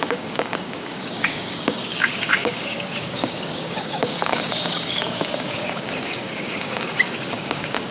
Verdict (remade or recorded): remade